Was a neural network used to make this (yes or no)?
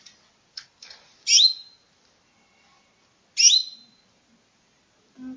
no